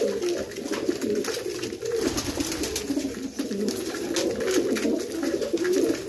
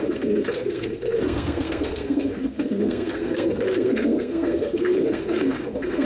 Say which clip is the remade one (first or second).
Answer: second